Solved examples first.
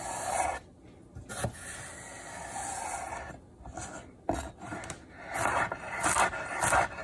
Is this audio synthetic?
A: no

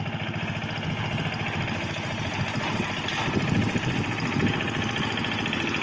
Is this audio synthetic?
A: no